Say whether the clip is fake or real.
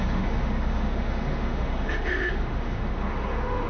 fake